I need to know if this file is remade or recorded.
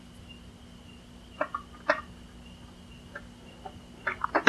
remade